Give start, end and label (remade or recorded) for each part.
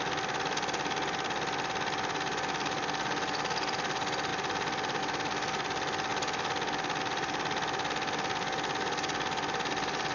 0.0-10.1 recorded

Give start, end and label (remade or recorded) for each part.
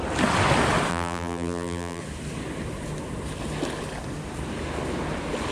0.0-0.9 recorded; 0.9-2.0 remade; 2.0-5.5 recorded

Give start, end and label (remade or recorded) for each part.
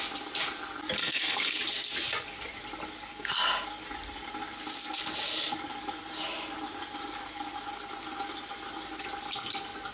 0.0-1.0 recorded; 1.0-1.6 remade; 1.6-3.1 recorded; 3.1-3.6 remade; 3.6-9.9 recorded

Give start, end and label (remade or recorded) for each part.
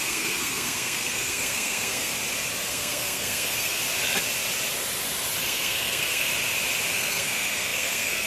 0.0-2.1 remade; 2.1-2.7 recorded; 2.7-3.8 remade; 3.8-5.4 recorded; 5.4-6.3 remade; 6.3-6.9 recorded; 6.9-8.3 remade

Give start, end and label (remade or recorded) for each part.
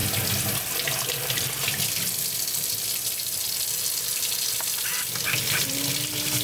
0.0-6.4 recorded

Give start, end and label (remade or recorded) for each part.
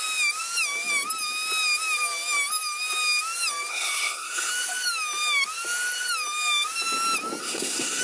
0.0-3.7 recorded; 3.7-4.5 remade; 4.5-7.4 recorded; 7.4-8.0 remade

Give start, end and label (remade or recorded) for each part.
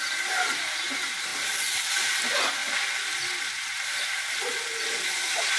0.0-1.3 remade; 1.3-1.9 recorded; 1.9-2.6 remade; 2.6-3.6 recorded; 3.6-5.6 remade